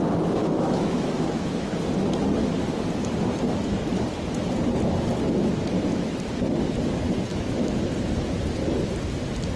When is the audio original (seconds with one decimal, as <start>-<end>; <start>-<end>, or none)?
0.0-0.4; 1.8-7.3; 7.8-9.6